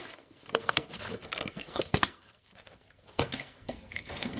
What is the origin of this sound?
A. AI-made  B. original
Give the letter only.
A